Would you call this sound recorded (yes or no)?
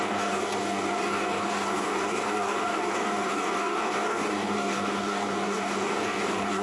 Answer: no